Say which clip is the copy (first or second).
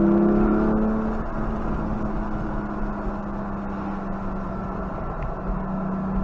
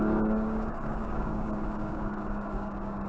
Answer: second